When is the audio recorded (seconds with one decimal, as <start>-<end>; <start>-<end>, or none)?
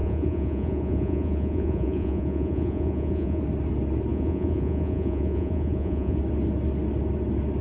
3.4-4.1; 6.2-7.6